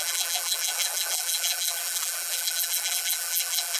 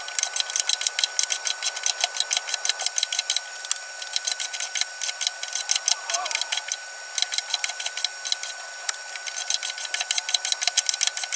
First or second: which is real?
second